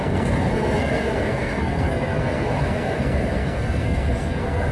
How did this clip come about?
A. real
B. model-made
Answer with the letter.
B